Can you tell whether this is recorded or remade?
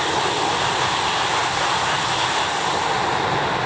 recorded